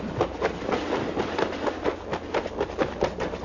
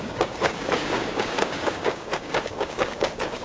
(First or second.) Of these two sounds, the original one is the first